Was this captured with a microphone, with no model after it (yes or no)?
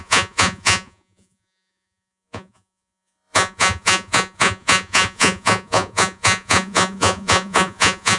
no